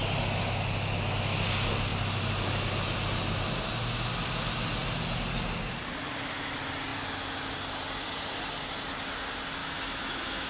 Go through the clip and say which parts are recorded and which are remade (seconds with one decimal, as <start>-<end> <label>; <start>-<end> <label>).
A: 0.0-9.6 recorded; 9.6-10.5 remade